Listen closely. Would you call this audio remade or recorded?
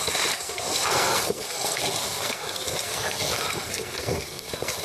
remade